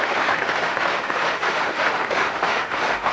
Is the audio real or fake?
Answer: fake